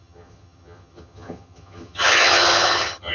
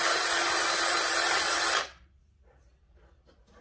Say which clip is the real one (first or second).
second